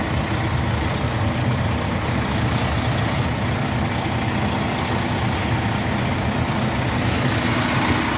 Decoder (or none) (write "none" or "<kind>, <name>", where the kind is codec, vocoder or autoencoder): none